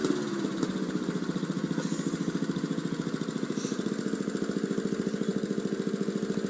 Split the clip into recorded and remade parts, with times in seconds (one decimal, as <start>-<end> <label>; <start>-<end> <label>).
0.0-3.9 remade; 3.9-6.5 recorded